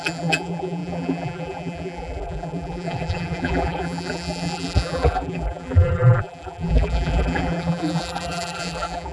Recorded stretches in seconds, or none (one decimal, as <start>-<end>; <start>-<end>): none

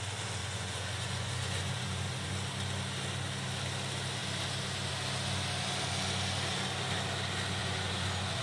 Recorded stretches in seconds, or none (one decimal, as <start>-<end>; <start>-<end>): 0.0-0.4; 2.3-7.6